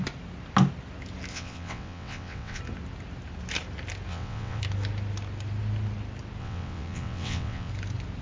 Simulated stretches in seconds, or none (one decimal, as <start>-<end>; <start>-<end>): 1.3-2.6; 4.1-4.6; 6.4-7.7